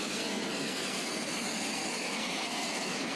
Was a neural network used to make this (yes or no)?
yes